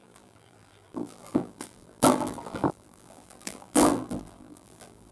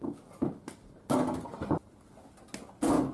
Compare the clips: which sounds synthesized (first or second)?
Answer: first